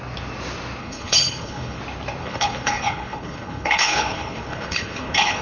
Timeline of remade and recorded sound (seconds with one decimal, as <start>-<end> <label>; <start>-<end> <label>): 0.0-0.8 recorded; 0.8-1.8 remade; 1.8-2.2 recorded; 2.2-5.4 remade